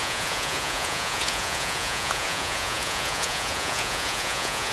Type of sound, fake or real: fake